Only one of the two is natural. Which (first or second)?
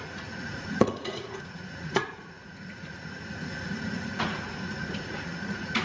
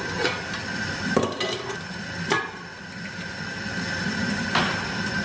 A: second